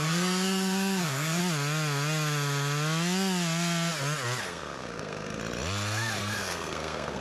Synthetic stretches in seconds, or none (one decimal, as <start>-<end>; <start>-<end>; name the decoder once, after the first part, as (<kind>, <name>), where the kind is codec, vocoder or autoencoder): 0.0-1.4 (codec, SNAC); 4.4-5.4; 6.2-7.2